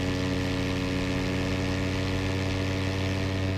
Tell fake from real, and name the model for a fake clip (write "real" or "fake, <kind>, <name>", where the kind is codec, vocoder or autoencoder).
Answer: real